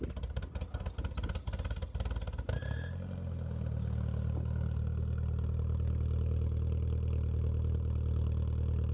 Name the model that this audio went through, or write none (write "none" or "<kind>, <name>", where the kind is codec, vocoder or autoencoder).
none